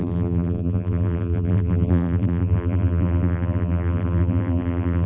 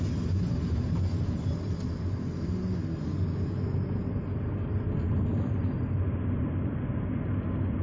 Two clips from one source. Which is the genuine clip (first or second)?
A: second